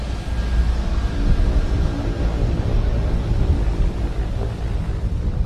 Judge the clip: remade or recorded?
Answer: recorded